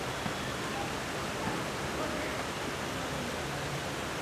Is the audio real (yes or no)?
yes